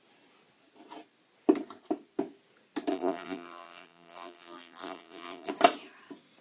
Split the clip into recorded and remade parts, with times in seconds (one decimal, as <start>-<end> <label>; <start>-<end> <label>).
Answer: 0.0-2.9 recorded; 2.9-5.5 remade; 5.5-6.4 recorded